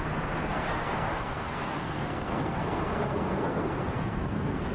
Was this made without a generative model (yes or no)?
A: no